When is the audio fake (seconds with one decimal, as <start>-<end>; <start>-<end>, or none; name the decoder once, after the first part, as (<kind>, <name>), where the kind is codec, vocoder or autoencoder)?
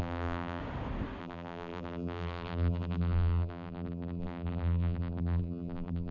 0.0-0.6 (vocoder, BigVGAN v2); 1.2-6.1